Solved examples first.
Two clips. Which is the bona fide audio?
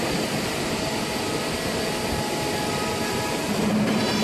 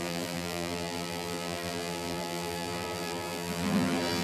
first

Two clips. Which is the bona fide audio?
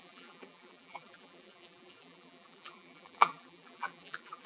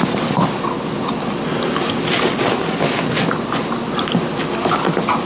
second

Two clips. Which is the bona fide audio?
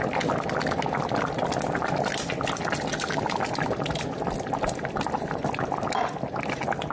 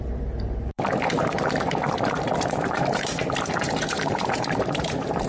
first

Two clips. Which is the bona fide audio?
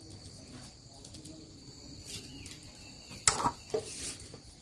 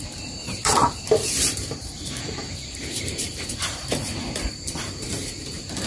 first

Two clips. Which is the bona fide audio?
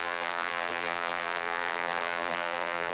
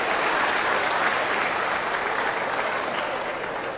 second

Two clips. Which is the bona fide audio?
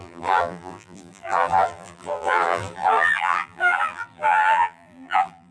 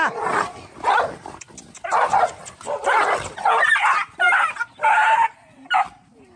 second